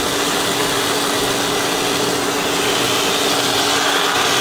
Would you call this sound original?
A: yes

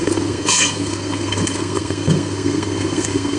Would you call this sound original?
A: no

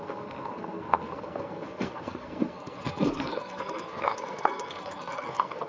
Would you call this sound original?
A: no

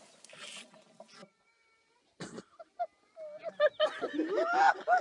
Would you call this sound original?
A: yes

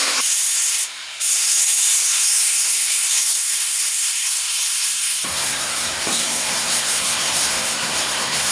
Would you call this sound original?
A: no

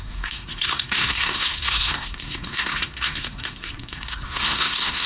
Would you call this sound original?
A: no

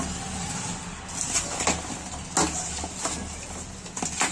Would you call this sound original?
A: yes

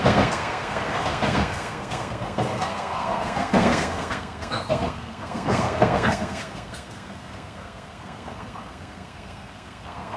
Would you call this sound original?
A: no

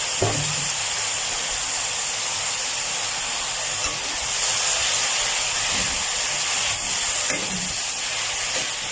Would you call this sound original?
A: yes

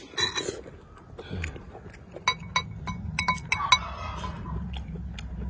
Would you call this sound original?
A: yes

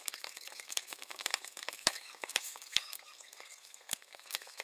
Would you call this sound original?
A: no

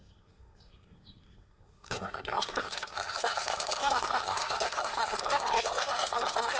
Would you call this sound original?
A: no